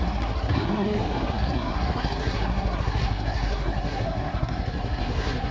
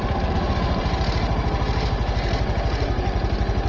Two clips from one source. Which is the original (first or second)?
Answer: second